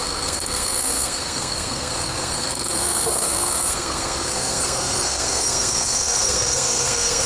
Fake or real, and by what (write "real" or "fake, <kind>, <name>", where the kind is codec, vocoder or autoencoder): fake, codec, SNAC